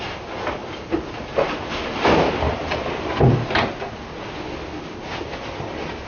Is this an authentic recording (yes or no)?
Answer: yes